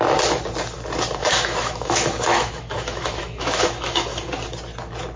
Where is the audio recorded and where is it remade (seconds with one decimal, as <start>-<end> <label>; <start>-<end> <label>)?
0.0-1.2 recorded; 1.2-4.3 remade; 4.3-5.2 recorded

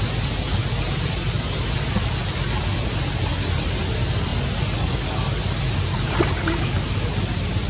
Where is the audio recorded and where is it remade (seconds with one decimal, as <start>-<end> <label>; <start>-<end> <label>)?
0.0-7.7 recorded

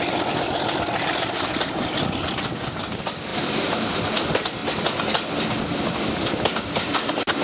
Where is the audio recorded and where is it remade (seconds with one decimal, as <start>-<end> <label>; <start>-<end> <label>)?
0.0-7.4 recorded